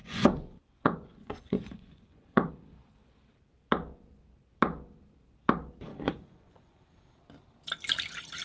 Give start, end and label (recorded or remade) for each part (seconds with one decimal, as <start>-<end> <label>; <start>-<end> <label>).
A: 0.0-2.5 remade; 2.5-5.9 recorded; 5.9-6.9 remade; 6.9-8.4 recorded